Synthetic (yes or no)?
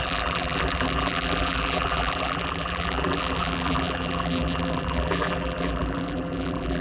yes